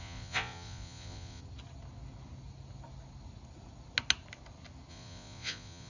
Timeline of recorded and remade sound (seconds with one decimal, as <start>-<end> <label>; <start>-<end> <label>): 0.0-1.4 remade; 1.4-4.9 recorded; 4.9-5.9 remade